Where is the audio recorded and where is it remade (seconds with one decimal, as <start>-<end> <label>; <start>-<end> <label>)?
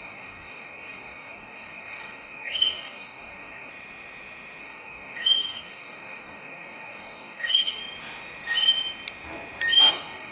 0.0-3.7 remade; 3.7-4.6 recorded; 4.6-7.8 remade; 7.8-9.9 recorded; 9.9-10.3 remade